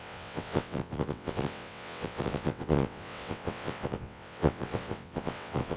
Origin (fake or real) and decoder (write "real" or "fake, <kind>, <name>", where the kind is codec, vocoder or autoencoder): fake, vocoder, WaveNeXt